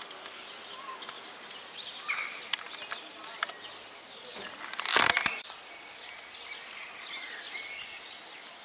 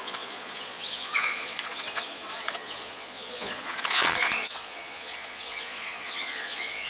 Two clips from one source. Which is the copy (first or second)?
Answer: second